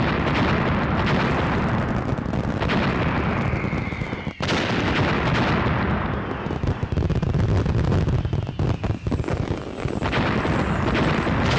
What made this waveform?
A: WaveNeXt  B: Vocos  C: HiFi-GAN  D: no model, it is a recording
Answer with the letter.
D